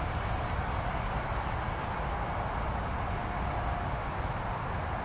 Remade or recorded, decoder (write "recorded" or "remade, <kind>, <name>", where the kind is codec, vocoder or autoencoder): recorded